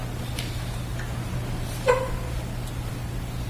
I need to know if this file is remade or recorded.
recorded